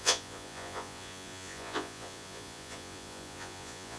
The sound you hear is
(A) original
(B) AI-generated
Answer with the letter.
B